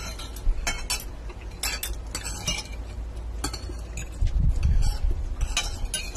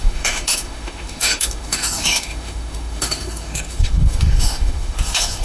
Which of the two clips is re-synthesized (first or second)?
second